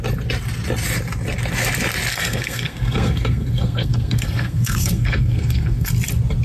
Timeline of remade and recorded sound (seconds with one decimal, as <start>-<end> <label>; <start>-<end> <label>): 0.0-2.1 recorded; 2.1-5.9 remade; 5.9-6.4 recorded